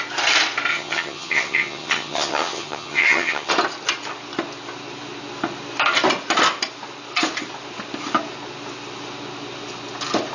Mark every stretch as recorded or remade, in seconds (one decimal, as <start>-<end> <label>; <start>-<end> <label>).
0.0-0.7 recorded; 0.7-3.5 remade; 3.5-10.3 recorded